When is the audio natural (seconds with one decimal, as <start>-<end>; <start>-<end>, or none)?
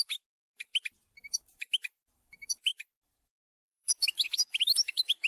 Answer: 0.7-1.2